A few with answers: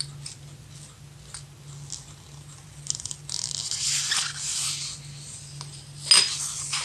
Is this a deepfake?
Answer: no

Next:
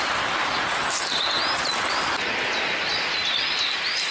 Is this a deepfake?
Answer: no